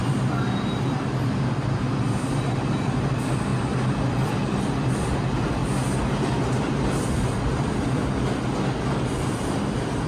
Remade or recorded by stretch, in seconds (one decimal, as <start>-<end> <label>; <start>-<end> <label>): 0.0-3.5 remade; 3.5-4.3 recorded; 4.3-5.6 remade; 5.6-6.5 recorded; 6.5-8.0 remade; 8.0-9.1 recorded; 9.1-10.1 remade

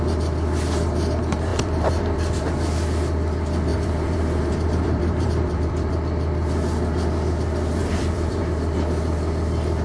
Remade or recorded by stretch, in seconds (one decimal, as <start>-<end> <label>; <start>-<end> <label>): 0.0-1.5 recorded; 1.5-2.4 remade; 2.4-3.7 recorded; 3.7-5.9 remade; 5.9-7.8 recorded; 7.8-8.4 remade; 8.4-9.8 recorded

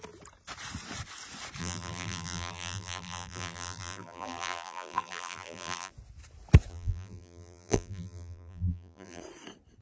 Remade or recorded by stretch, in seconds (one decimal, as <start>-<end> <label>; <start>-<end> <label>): 0.0-1.6 recorded; 1.6-5.9 remade; 5.9-6.7 recorded; 6.7-9.2 remade; 9.2-9.8 recorded

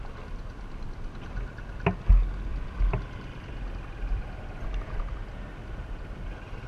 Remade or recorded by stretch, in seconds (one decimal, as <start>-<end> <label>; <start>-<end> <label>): 0.0-2.5 recorded; 2.5-6.7 remade

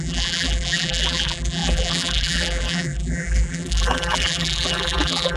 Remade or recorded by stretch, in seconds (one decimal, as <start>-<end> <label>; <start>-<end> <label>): 0.0-5.4 remade